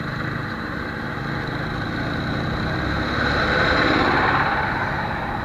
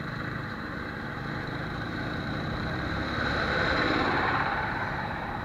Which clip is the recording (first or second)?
first